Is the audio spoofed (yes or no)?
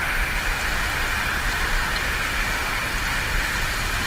no